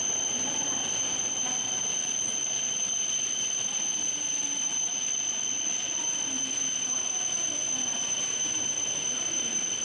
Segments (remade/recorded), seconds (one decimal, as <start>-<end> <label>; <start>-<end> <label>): 0.0-2.0 recorded; 2.0-2.7 remade; 2.7-4.9 recorded; 4.9-6.0 remade; 6.0-9.8 recorded